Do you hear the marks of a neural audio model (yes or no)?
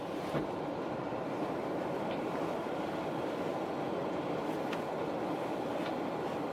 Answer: no